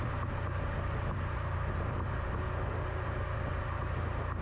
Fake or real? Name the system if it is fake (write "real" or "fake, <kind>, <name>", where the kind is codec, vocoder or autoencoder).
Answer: real